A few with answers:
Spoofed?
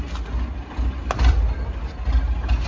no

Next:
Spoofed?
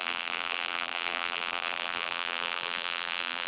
yes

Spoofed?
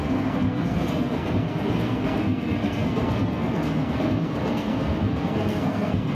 yes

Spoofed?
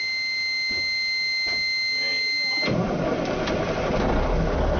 no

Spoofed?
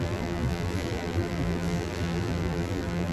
yes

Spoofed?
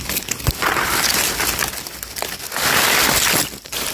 no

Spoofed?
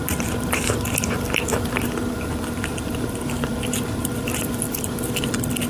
yes